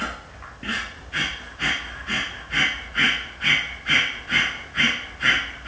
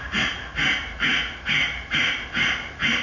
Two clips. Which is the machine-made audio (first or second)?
second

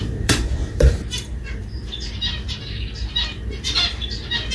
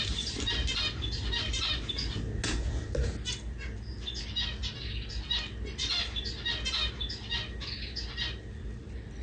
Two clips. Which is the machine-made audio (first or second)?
first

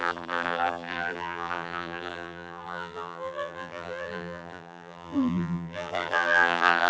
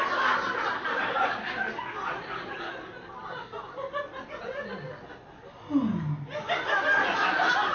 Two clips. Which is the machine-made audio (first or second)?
first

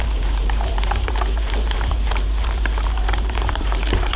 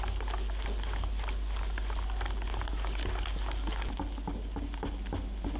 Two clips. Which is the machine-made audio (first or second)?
first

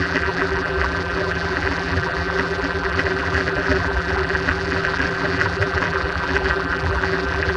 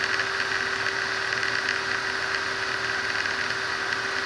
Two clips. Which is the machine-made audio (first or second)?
first